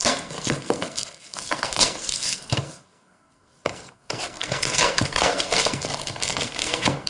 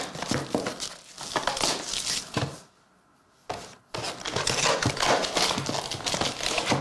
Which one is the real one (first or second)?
second